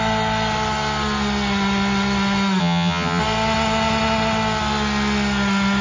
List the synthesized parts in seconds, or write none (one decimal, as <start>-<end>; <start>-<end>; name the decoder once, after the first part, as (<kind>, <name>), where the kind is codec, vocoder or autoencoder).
2.6-3.2 (vocoder, HiFi-GAN)